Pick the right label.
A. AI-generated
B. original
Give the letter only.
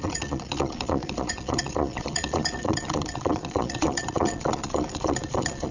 A